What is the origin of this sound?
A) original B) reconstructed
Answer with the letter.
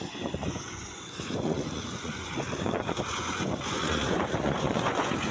B